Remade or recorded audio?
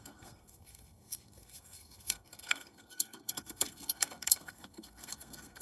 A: remade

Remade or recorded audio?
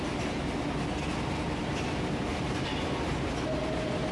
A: recorded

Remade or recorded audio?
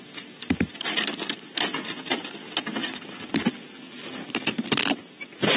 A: recorded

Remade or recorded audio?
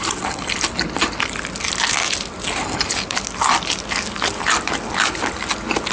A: recorded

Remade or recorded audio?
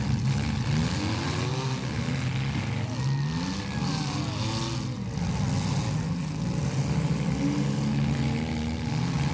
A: recorded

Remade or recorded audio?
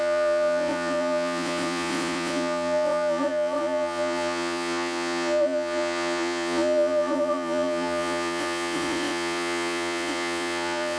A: remade